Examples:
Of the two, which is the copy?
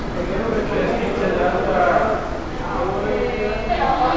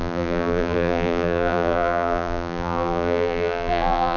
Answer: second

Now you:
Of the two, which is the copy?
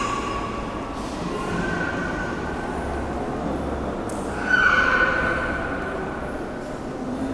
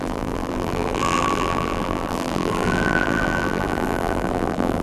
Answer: second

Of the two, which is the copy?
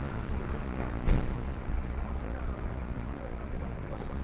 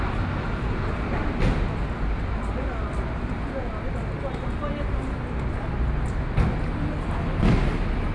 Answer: first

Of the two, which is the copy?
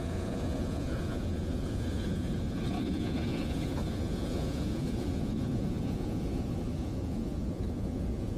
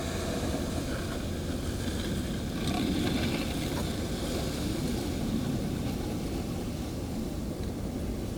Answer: first